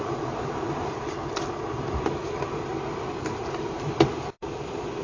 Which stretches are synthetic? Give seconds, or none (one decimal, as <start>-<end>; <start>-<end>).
0.0-1.2; 3.2-5.0